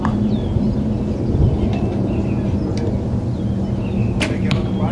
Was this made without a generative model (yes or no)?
yes